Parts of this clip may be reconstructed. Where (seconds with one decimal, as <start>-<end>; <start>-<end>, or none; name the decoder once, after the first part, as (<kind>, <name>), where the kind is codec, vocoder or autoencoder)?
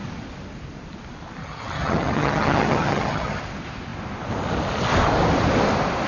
1.4-3.4 (vocoder, HiFi-GAN)